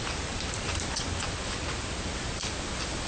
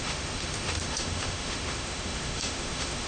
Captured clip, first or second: first